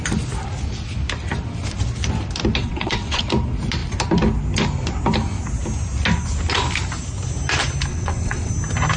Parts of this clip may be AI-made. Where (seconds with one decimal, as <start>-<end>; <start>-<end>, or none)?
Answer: 2.6-3.2; 7.9-8.5